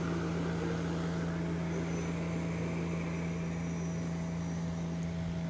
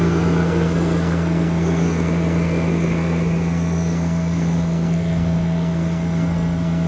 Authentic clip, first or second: first